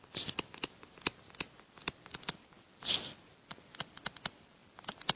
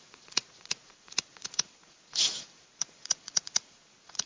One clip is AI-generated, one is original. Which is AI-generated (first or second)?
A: second